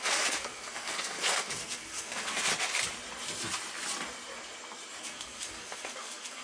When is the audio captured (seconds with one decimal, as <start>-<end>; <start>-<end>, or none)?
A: 2.5-5.0